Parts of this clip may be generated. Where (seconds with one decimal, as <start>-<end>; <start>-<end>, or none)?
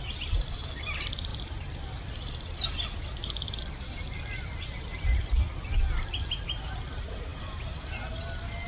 1.3-5.3; 7.3-7.9